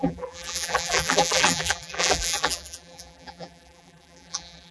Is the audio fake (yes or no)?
yes